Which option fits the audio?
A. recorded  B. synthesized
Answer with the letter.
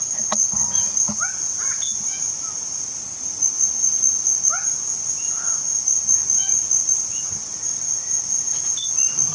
A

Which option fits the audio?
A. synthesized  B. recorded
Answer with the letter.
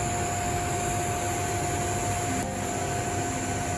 B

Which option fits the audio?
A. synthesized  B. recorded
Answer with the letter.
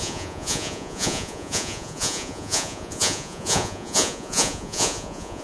A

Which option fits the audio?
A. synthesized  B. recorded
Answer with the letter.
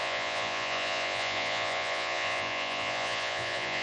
A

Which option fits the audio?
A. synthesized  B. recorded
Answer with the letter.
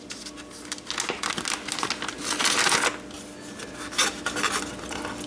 B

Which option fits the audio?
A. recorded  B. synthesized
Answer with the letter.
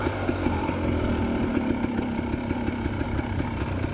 A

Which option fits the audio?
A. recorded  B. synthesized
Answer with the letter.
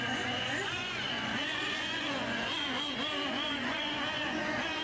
B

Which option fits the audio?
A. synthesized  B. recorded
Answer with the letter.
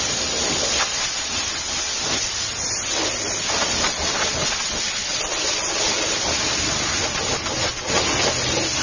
B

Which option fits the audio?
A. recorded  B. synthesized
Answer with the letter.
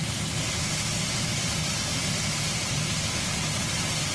A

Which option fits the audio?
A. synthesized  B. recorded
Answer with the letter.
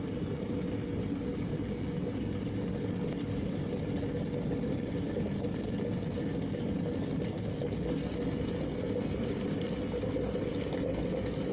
B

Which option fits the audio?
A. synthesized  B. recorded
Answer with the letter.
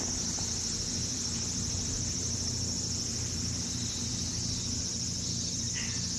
B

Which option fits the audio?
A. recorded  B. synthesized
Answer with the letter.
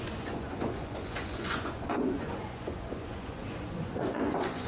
B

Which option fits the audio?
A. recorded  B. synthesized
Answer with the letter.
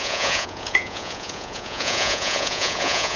B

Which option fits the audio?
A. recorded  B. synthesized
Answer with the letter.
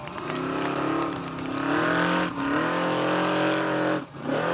A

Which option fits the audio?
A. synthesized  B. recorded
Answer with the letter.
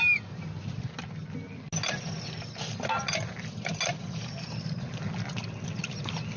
B